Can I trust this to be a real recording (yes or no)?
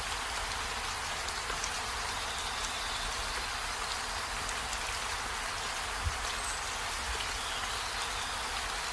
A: yes